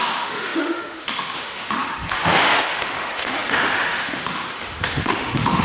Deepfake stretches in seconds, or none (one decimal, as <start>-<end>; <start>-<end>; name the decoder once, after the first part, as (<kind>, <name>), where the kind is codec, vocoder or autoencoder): 0.0-5.6 (autoencoder, DAC-VAE)